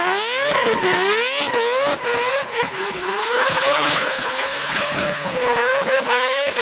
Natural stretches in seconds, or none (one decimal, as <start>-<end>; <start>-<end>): 0.0-2.3